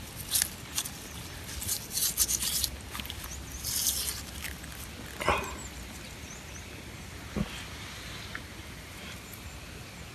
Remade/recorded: recorded